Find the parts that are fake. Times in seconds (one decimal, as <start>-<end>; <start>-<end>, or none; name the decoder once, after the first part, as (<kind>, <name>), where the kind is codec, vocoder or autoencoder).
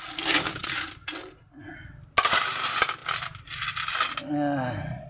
none